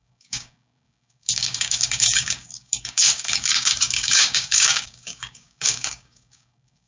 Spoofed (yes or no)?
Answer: yes